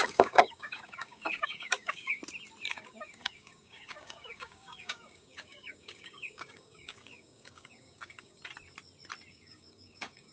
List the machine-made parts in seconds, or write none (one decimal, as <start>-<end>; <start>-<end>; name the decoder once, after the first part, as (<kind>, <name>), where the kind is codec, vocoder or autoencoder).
0.0-2.2 (codec, DAC); 2.7-8.4; 9.3-10.3